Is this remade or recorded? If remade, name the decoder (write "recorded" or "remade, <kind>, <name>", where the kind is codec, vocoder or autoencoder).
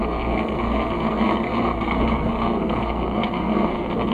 remade, codec, SNAC